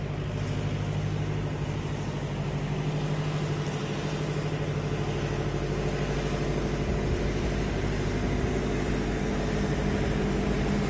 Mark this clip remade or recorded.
recorded